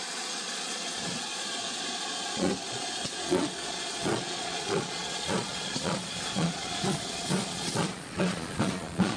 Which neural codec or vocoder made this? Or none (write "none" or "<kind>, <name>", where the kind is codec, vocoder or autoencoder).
vocoder, Vocos